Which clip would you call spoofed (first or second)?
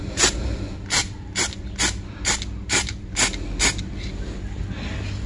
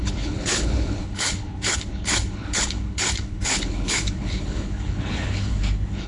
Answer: second